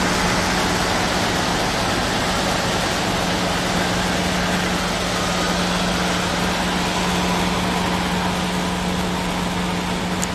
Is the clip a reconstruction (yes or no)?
no